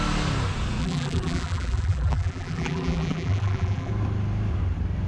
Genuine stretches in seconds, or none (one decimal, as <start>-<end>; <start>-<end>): 0.0-0.8; 3.9-5.1